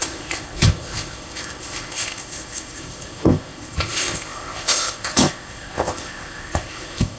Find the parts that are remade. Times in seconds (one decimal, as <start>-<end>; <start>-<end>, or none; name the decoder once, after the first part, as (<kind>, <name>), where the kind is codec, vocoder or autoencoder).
0.0-7.2 (codec, ZipCodec)